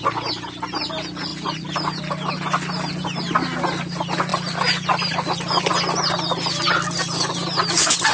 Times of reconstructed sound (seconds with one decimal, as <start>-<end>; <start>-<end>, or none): 1.3-2.0; 4.3-5.7